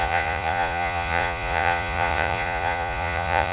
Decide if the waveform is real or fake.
fake